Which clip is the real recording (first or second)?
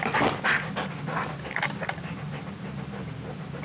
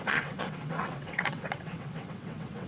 first